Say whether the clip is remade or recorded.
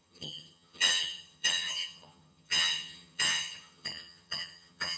remade